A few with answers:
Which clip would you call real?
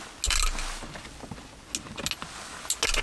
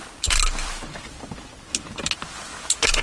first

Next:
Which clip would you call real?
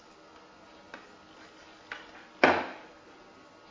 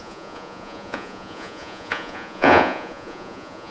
first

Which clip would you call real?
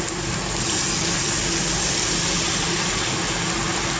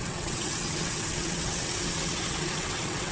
first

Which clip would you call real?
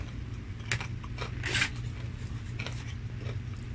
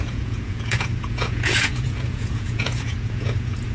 first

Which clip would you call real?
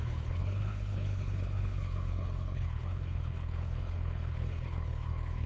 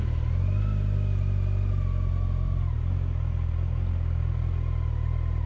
second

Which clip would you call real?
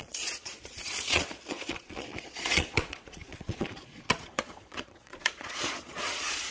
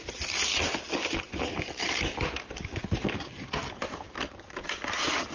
second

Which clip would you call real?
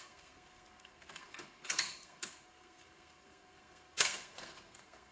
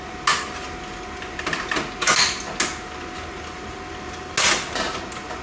second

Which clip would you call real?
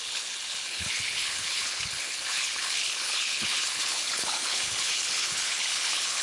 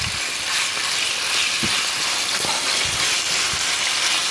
second